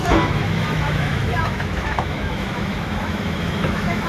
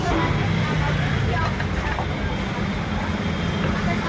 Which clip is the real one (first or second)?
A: second